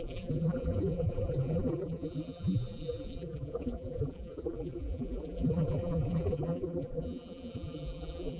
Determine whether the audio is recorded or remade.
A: remade